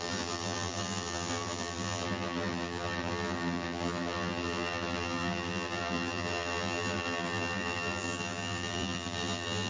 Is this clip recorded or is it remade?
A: remade